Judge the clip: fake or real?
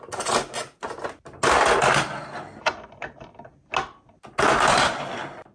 real